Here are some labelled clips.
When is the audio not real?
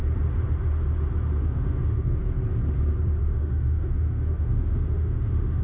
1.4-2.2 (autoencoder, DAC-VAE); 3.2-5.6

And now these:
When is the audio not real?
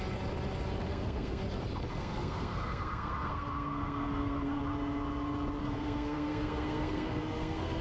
0.9-1.4 (codec, SNAC); 1.9-4.6; 5.6-7.8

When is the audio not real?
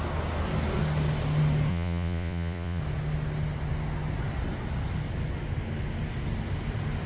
1.7-2.8 (vocoder, Vocos)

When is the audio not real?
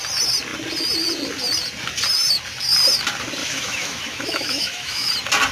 3.4-5.1 (autoencoder, DAC-VAE)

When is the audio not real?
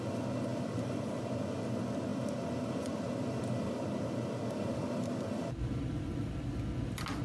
0.5-1.2 (vocoder, BigVGAN v2); 2.1-6.4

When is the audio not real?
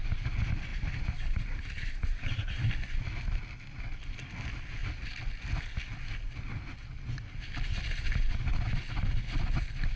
0.7-2.7 (vocoder, BigVGAN v2)